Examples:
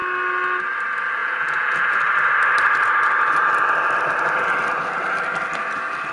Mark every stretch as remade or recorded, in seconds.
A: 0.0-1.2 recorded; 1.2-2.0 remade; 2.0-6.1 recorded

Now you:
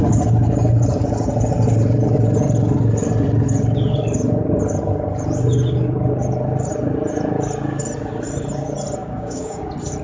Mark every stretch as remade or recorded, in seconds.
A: 0.0-9.0 recorded; 9.0-9.6 remade; 9.6-10.0 recorded